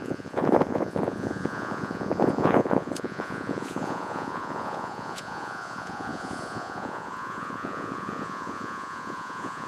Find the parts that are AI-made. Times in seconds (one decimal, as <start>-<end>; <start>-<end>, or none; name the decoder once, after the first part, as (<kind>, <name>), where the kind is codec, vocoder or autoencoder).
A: 0.0-9.7 (vocoder, Vocos)